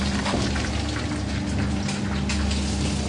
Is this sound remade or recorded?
recorded